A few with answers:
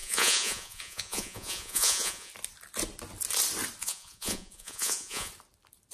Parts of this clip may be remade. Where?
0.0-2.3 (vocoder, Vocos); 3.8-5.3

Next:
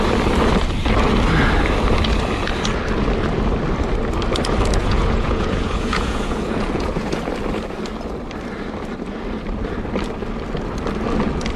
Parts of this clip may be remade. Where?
4.8-7.3 (vocoder, Vocos)

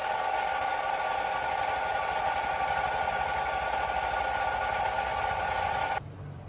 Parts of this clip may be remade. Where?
none

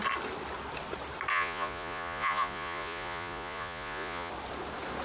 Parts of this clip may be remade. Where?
1.3-4.3 (vocoder, Vocos)